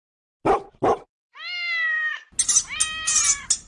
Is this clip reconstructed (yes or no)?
no